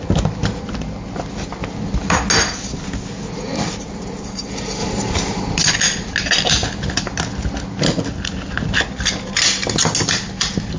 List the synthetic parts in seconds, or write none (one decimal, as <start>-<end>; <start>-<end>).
3.5-4.2; 4.8-5.6